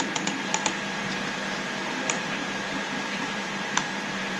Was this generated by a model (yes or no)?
yes